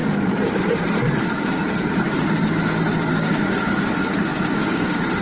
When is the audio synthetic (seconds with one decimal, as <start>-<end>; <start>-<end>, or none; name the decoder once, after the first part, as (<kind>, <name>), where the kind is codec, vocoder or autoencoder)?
3.1-5.2 (codec, DAC)